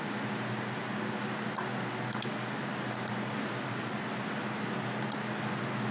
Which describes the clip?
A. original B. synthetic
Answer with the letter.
A